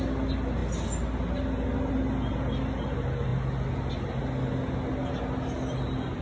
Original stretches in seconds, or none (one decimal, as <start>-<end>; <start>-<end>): 0.0-6.2